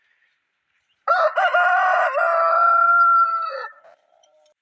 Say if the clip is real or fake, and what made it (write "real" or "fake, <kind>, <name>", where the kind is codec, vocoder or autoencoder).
fake, vocoder, BigVGAN v2